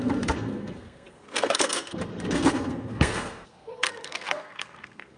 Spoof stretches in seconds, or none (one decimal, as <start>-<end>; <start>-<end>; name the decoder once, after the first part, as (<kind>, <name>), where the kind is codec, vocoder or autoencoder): 0.0-5.2 (codec, SNAC)